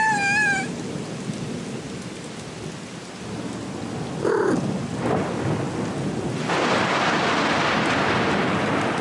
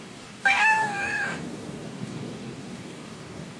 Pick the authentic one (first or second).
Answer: first